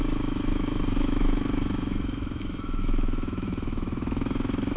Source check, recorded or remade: remade